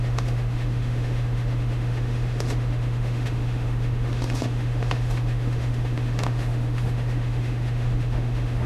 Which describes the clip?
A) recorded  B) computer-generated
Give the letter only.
B